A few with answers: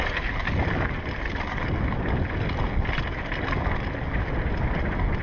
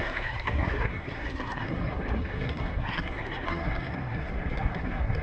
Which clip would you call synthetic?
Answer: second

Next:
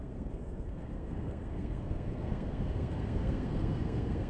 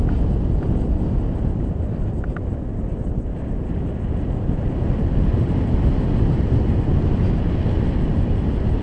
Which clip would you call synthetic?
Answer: first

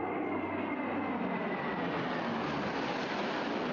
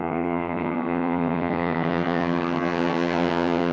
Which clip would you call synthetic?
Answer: second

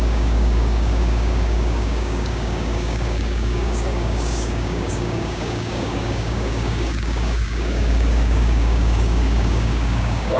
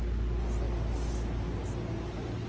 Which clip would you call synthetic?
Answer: first